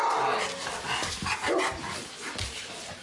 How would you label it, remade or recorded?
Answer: recorded